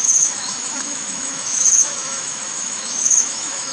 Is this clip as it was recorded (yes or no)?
no